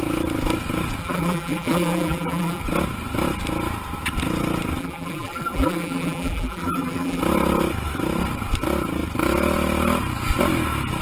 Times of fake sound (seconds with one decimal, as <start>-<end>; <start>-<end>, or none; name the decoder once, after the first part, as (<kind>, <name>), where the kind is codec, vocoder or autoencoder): 1.0-2.6 (vocoder, BigVGAN v2); 4.8-7.2